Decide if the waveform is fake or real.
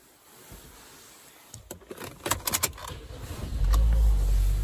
real